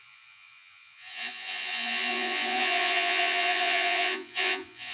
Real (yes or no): no